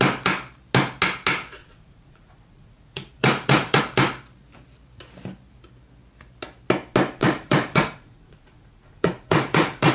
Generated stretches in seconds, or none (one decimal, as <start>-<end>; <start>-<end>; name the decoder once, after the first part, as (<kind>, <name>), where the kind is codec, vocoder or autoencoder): 1.6-3.8 (vocoder, Vocos); 7.2-9.9